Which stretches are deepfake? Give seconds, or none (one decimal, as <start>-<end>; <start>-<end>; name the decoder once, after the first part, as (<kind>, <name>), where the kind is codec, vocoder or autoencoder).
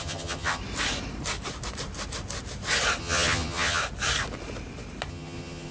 0.0-0.6 (vocoder, HiFi-GAN); 3.0-3.8; 5.1-5.7